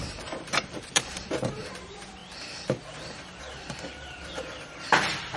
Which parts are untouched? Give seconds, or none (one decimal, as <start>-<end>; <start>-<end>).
2.2-3.4